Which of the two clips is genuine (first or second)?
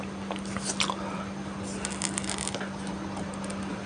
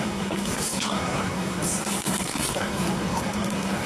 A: first